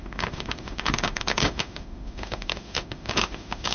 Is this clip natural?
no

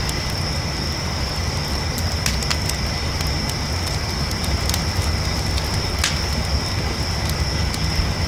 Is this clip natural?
yes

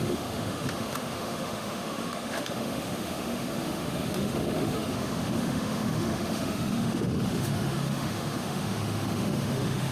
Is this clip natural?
no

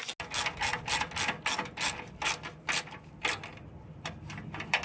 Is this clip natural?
yes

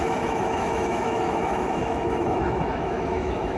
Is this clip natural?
no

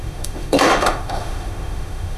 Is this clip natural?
no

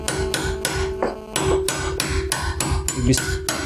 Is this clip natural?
yes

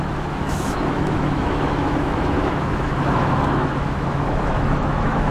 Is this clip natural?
no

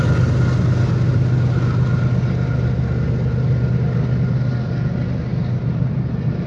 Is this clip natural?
yes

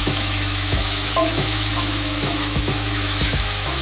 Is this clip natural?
no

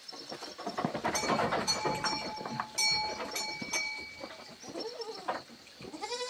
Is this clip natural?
yes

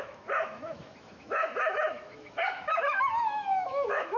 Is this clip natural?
no